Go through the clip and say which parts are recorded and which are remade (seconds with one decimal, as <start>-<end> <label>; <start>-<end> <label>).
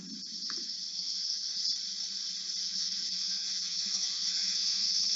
0.0-0.9 recorded; 0.9-1.6 remade; 1.6-2.6 recorded; 2.6-5.2 remade